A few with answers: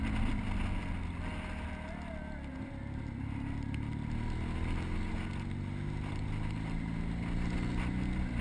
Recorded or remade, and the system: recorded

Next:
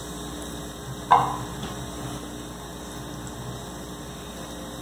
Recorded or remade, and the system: recorded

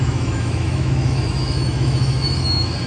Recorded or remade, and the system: remade, autoencoder, DAC-VAE